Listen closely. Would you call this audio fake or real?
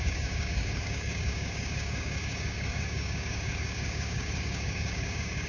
fake